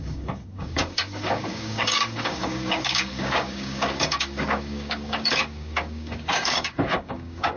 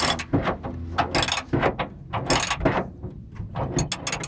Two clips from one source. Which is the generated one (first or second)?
first